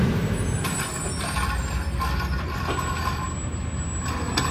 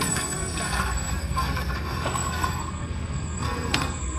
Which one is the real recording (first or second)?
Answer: first